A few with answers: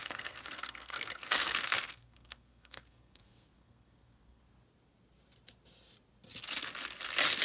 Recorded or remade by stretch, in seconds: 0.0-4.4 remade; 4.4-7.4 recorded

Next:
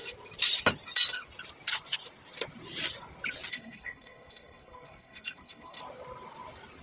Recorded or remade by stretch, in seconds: 0.0-3.5 recorded; 3.5-5.8 remade; 5.8-6.8 recorded